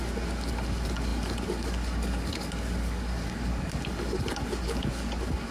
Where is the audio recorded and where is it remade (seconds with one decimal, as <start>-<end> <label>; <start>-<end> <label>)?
0.0-5.5 remade